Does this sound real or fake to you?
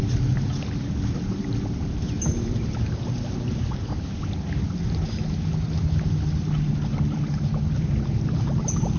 real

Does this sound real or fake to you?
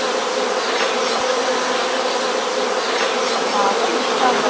real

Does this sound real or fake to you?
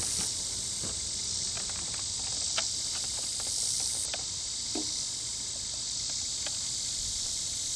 real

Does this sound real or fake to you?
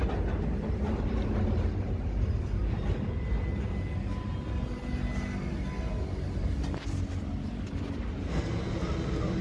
real